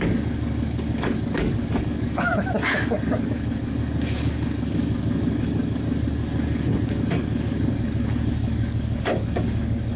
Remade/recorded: remade